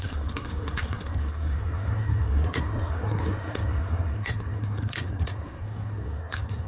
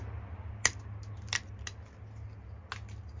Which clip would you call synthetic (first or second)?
first